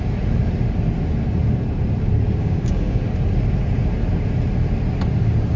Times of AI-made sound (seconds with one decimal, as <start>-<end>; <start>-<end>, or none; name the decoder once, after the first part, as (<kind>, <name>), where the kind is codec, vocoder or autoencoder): 2.4-3.0 (codec, DAC)